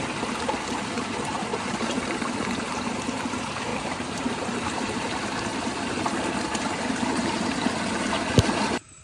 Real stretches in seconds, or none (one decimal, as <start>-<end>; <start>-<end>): 0.0-1.5; 2.1-3.7; 5.0-5.5; 7.4-9.0

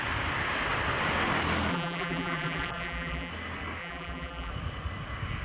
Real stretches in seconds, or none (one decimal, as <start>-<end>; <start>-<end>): 0.0-1.7; 3.3-3.8; 4.5-5.4

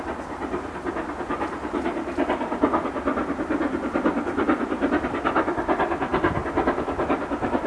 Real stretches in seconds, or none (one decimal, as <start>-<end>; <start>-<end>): 0.0-7.7

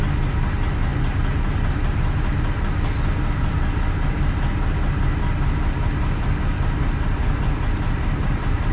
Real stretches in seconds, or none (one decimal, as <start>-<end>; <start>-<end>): 0.0-8.7

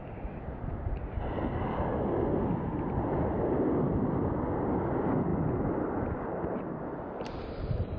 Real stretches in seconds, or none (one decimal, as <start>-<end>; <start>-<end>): 0.0-8.0

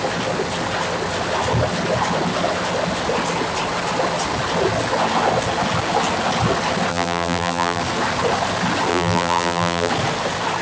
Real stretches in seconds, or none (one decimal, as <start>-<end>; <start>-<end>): 0.0-6.9; 7.8-8.9; 9.9-10.6

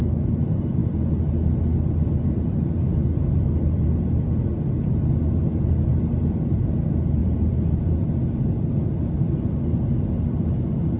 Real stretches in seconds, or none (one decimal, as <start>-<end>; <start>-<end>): 0.0-7.2; 8.7-11.0